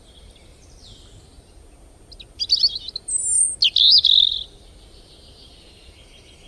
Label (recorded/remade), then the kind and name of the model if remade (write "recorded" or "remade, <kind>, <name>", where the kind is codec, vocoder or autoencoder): recorded